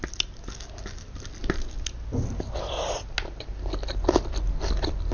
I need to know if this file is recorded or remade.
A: recorded